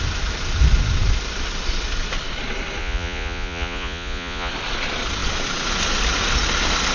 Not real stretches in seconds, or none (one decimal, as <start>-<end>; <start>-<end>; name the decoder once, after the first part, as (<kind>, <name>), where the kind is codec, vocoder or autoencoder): 2.8-4.5 (vocoder, Vocos)